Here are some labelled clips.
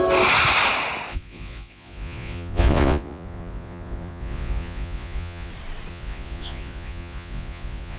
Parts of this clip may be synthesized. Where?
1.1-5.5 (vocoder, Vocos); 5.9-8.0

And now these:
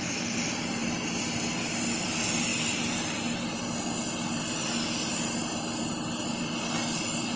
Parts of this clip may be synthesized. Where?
none

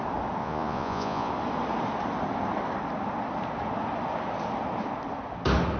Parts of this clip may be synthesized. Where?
0.4-1.3 (vocoder, Vocos)

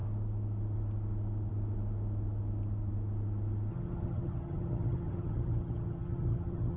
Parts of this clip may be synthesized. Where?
3.7-6.8 (vocoder, HiFi-GAN)

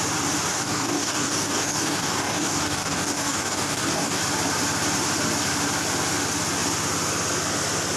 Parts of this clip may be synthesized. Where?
0.5-4.2 (codec, DAC)

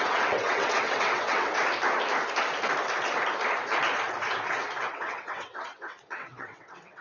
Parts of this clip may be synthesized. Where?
0.0-1.6 (vocoder, WaveNeXt); 4.9-7.0